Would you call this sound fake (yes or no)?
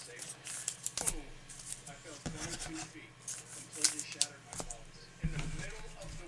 no